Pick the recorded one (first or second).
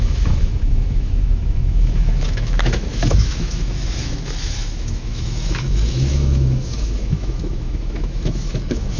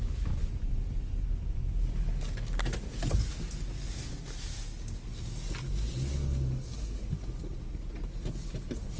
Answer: second